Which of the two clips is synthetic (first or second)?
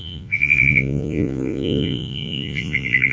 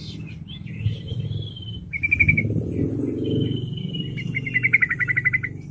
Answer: first